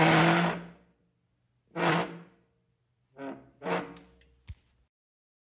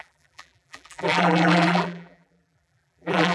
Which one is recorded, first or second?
first